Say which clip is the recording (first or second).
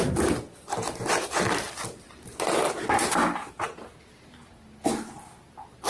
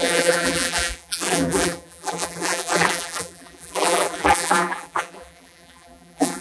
first